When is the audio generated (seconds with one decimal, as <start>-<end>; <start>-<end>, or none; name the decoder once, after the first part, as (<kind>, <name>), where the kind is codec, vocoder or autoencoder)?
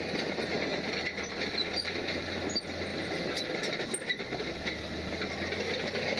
none